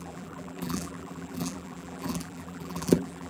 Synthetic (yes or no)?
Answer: yes